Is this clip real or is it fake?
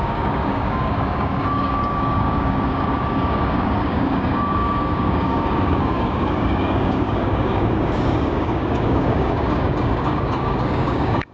fake